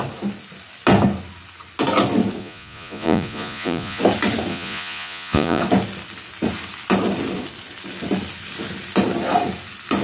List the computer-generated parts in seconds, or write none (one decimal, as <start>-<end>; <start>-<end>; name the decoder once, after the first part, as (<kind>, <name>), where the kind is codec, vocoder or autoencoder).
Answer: 2.4-4.0 (vocoder, Vocos); 4.5-5.6

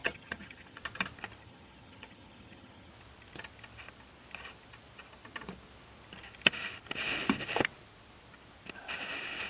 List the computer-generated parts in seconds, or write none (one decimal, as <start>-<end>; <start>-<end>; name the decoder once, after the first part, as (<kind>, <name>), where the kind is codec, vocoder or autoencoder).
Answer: 0.0-0.8 (vocoder, HiFi-GAN); 1.4-2.9

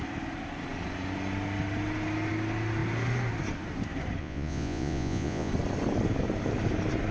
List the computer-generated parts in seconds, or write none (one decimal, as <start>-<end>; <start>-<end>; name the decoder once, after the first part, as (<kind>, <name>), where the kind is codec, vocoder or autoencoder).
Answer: 4.2-5.5 (vocoder, Vocos)

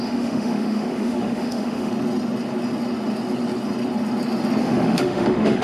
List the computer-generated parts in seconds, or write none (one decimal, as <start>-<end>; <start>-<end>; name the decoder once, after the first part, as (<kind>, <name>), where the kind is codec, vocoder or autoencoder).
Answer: 0.0-1.9 (autoencoder, DAC-VAE); 4.6-5.6

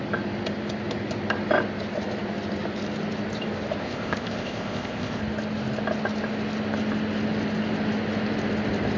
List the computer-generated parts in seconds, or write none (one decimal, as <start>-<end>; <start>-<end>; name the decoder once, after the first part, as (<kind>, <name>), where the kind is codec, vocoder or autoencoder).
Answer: 3.8-5.2 (codec, ZipCodec)